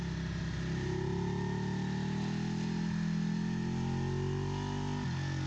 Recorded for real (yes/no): yes